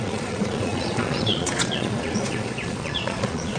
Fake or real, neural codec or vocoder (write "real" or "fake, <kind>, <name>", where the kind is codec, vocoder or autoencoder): fake, vocoder, Vocos